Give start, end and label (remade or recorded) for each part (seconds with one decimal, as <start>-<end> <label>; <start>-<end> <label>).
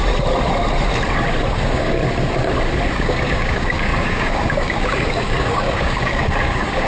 0.0-1.5 recorded; 1.5-2.0 remade; 2.0-2.9 recorded; 2.9-6.9 remade